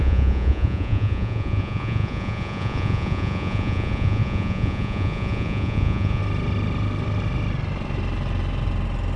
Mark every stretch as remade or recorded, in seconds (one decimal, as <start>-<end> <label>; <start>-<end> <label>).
0.0-6.2 remade; 6.2-9.2 recorded